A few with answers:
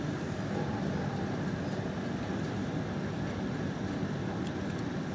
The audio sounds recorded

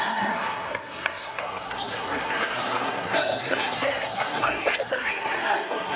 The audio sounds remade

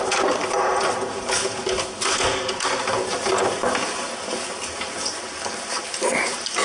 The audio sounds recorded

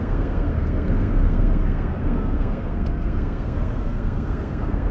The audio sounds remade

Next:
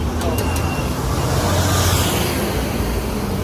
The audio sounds recorded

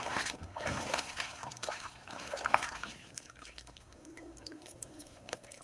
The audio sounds remade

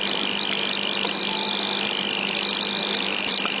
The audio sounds recorded